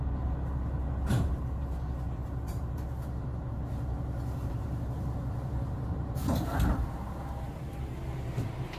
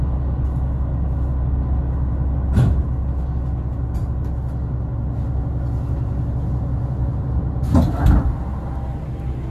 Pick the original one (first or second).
second